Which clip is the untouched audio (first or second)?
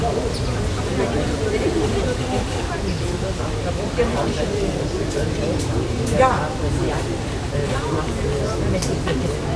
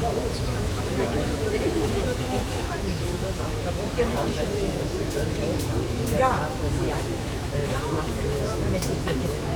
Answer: first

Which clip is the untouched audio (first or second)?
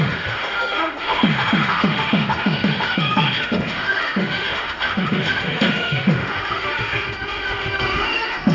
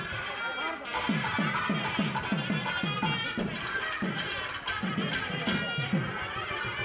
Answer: second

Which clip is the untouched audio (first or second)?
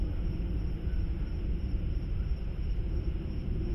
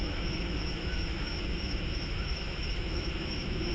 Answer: first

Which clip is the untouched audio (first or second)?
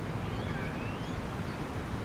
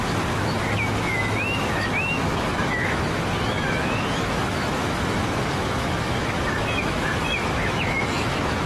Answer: first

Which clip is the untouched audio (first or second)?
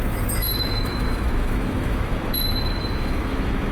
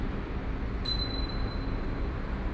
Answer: second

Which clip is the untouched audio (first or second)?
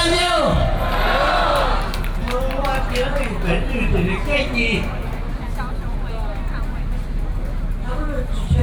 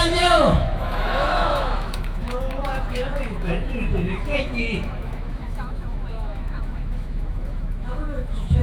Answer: first